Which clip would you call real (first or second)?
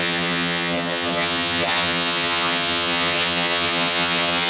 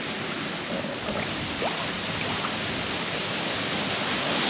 second